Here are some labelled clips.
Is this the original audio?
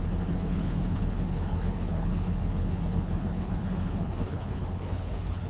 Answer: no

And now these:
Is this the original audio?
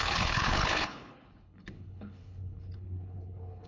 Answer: no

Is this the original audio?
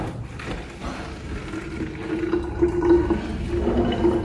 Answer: yes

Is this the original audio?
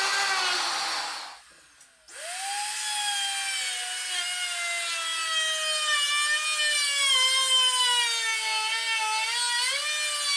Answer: yes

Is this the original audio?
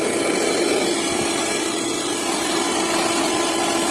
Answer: yes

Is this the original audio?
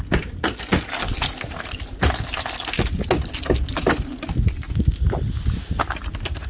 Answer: yes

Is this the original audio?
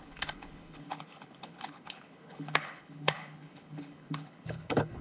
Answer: no